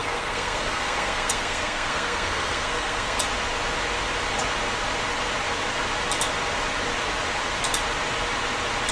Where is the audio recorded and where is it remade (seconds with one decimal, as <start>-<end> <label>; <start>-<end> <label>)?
0.0-3.2 remade; 3.2-8.9 recorded